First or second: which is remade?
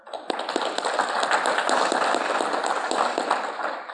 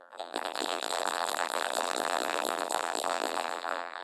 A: second